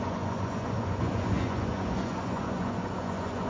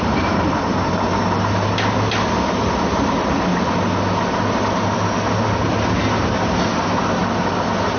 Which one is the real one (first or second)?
second